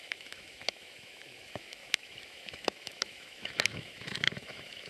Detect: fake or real fake